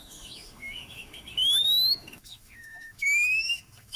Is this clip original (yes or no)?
no